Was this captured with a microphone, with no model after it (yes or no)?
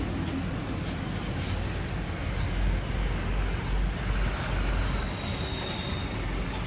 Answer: yes